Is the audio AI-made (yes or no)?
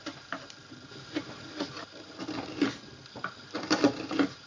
no